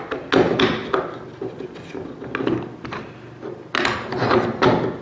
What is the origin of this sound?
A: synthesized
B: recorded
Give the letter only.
B